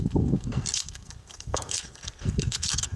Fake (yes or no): yes